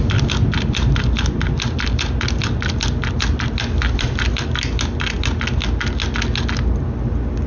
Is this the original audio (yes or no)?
yes